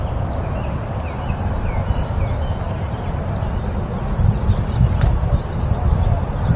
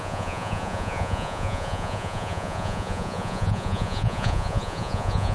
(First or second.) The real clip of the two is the first